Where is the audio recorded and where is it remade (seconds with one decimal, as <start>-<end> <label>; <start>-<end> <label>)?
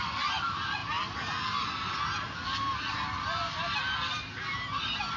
0.0-5.2 recorded